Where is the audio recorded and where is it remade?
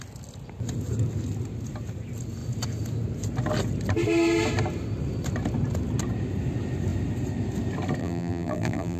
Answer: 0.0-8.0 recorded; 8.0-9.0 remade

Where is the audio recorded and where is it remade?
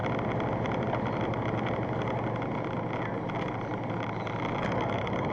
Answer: 0.0-4.6 recorded; 4.6-5.3 remade